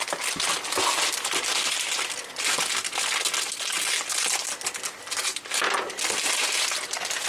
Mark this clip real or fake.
real